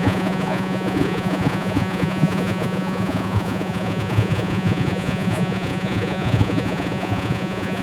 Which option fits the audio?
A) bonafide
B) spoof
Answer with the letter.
B